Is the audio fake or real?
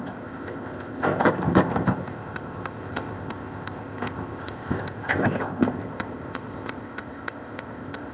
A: fake